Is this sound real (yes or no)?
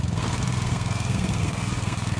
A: no